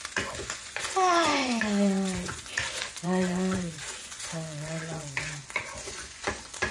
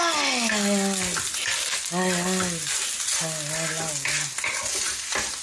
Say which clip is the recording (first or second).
second